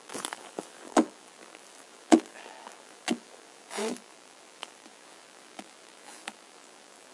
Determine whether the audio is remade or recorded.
remade